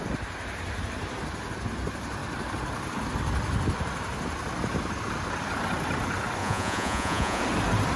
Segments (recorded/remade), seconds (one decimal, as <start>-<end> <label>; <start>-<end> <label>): 0.0-6.4 recorded; 6.4-7.4 remade; 7.4-8.0 recorded